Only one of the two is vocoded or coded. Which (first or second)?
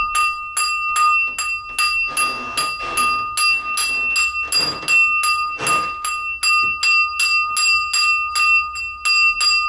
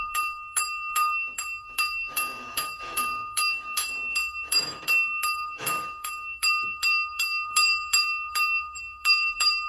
second